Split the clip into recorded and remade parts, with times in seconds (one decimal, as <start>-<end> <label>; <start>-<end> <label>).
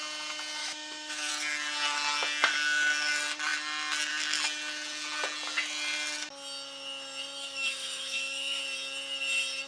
0.0-0.6 recorded; 0.6-1.3 remade; 1.3-7.4 recorded; 7.4-8.6 remade; 8.6-9.7 recorded